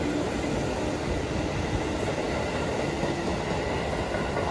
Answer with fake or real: real